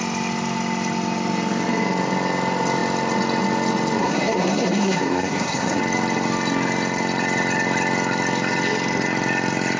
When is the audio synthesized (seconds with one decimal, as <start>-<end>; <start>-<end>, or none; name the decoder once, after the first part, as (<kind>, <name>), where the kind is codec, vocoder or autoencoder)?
4.0-5.8 (codec, SNAC)